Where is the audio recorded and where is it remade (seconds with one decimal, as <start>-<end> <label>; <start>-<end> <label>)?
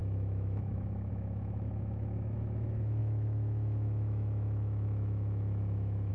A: 0.0-6.1 remade